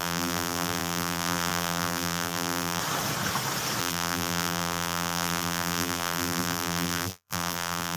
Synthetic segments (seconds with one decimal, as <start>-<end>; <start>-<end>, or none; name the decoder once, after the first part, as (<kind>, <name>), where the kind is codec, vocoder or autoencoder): 0.0-2.8 (vocoder, BigVGAN v2); 3.8-8.0